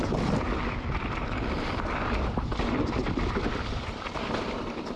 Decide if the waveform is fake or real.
fake